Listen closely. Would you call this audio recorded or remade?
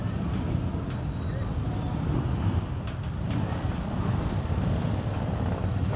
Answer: recorded